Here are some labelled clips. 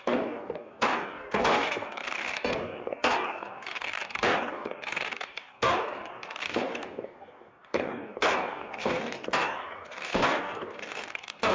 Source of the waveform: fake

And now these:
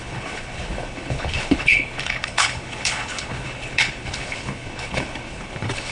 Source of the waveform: fake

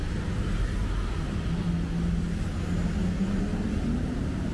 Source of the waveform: real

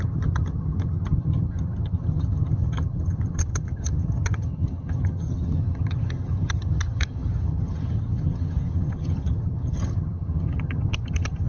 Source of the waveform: fake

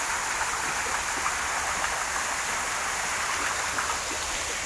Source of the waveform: real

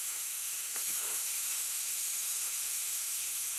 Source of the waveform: fake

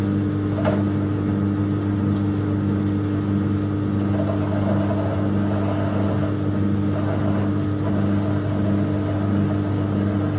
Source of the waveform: real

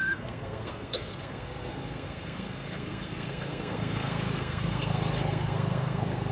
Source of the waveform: fake